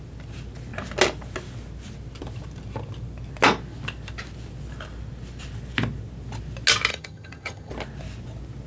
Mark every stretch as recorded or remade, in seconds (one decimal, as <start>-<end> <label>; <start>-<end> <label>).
0.0-6.9 recorded; 6.9-7.7 remade; 7.7-8.7 recorded